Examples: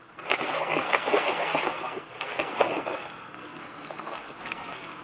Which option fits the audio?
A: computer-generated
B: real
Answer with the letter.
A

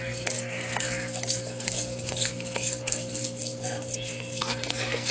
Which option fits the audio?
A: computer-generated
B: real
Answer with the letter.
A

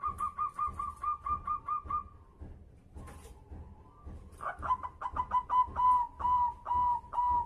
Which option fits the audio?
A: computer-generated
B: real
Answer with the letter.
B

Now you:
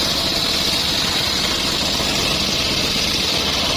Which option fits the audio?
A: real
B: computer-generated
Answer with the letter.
A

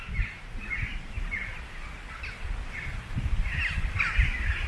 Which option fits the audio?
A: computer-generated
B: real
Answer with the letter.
B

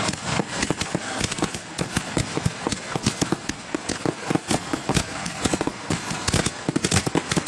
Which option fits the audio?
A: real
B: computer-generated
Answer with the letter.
B